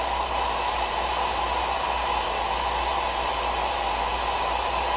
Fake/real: fake